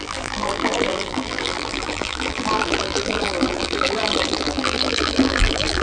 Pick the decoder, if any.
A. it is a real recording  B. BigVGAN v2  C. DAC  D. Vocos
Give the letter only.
B